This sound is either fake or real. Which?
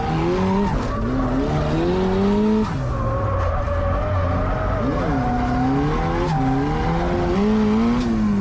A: real